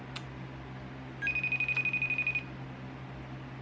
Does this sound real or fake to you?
real